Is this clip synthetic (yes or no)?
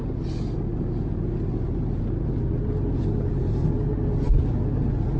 no